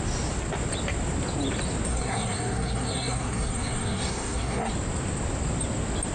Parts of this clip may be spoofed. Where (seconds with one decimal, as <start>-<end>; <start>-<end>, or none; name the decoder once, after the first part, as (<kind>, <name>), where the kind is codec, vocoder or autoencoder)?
1.9-4.7 (codec, SNAC)

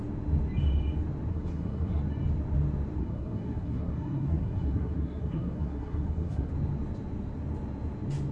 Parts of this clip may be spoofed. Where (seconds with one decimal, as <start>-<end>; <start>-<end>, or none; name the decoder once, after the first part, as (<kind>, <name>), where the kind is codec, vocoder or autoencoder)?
1.3-2.0 (codec, SNAC); 3.0-6.5

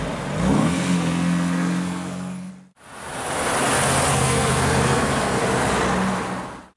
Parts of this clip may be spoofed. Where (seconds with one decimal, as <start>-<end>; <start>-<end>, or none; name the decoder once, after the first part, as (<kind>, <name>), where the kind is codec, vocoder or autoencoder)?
0.6-2.5 (codec, SNAC); 4.1-5.4

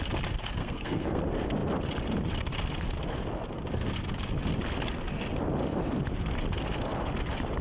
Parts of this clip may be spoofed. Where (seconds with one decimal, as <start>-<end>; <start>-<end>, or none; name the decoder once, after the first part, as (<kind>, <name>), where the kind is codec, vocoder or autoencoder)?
0.6-1.2 (codec, SNAC)

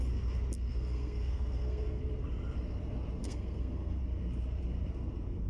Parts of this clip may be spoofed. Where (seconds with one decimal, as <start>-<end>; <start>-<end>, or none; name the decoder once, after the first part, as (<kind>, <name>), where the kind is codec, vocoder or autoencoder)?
0.7-2.0 (codec, SNAC); 3.2-4.0